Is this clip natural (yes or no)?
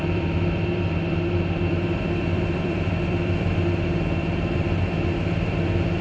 no